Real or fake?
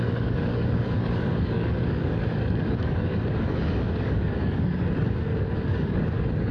fake